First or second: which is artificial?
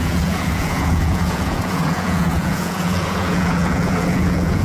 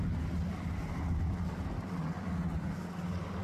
first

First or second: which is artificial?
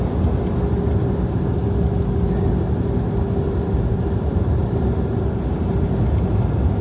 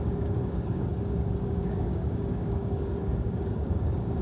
second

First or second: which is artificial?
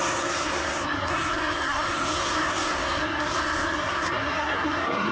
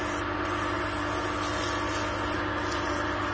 first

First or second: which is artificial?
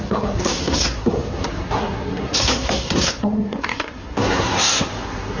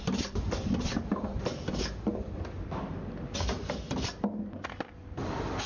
first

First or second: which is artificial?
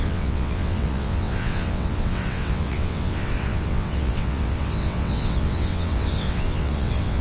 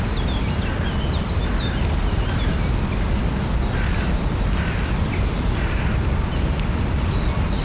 first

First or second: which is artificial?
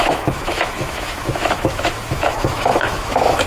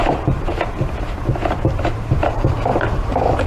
first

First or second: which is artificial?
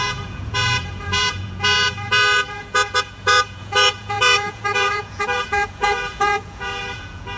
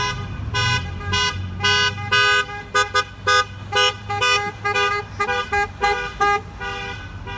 first